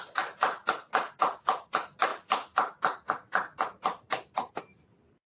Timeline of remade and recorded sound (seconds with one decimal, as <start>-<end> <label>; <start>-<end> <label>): 0.0-5.4 recorded